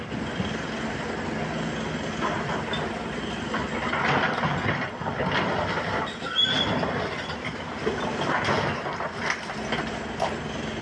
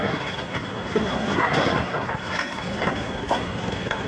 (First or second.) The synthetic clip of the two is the second